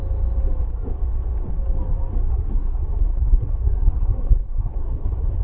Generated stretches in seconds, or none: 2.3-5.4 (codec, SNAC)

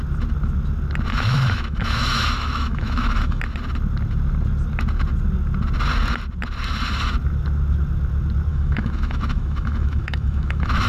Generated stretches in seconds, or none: 1.1-3.4 (autoencoder, DAC-VAE); 8.5-10.9

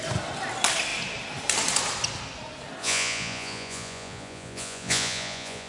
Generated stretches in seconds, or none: 2.8-5.7 (vocoder, Vocos)

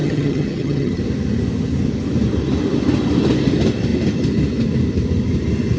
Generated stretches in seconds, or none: 0.0-1.0 (vocoder, HiFi-GAN)